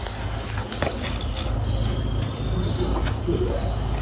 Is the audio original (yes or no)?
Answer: yes